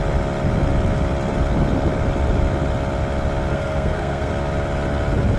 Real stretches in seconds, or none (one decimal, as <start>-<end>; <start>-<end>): 0.0-3.5; 4.3-5.4